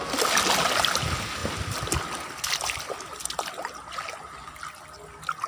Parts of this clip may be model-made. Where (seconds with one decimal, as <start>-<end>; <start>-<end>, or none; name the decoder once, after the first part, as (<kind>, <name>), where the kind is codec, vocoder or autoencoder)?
none